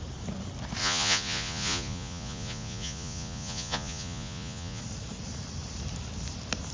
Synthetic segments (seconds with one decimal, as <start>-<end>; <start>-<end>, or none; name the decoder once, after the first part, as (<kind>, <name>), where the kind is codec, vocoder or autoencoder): 0.8-4.8 (vocoder, Vocos)